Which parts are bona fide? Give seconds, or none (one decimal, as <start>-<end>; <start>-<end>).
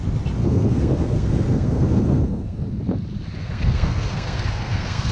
0.0-0.4; 2.7-3.4